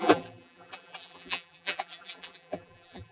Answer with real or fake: fake